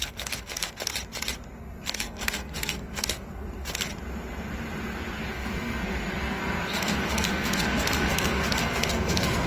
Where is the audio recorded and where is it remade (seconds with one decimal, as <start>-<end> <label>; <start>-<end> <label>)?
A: 0.0-0.9 remade; 0.9-1.6 recorded; 1.6-3.9 remade; 3.9-5.3 recorded; 5.3-9.5 remade